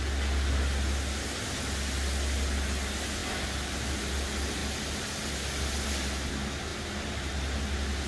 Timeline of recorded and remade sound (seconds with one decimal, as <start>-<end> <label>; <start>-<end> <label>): 0.0-8.1 recorded